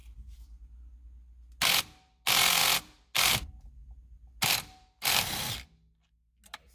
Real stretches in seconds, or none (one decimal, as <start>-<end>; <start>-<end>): 0.0-6.7